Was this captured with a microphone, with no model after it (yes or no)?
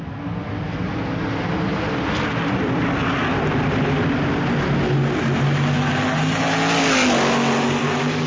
yes